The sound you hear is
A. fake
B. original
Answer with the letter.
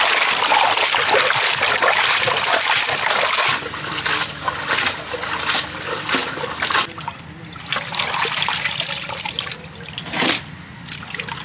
B